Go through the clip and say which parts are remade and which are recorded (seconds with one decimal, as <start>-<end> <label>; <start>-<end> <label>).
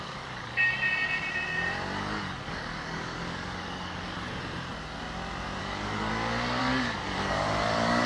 0.0-0.6 remade; 0.6-2.0 recorded; 2.0-4.3 remade; 4.3-5.6 recorded; 5.6-6.1 remade; 6.1-6.6 recorded; 6.6-8.1 remade